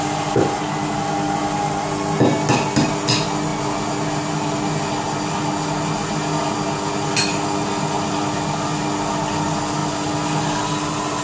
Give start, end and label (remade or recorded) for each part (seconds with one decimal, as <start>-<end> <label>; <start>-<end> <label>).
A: 0.0-11.2 recorded